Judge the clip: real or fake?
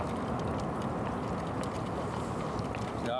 real